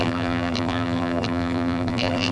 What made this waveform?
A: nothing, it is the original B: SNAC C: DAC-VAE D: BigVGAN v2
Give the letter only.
D